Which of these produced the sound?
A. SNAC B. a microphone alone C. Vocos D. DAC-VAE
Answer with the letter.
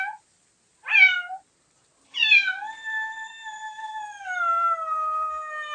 B